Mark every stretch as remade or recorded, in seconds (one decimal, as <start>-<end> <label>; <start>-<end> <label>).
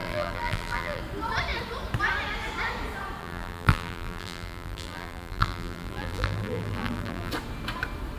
0.0-1.0 remade; 1.0-3.2 recorded; 3.2-7.3 remade; 7.3-8.2 recorded